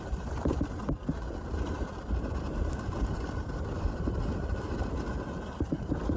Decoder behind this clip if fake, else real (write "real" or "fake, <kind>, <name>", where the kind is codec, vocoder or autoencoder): fake, vocoder, BigVGAN v2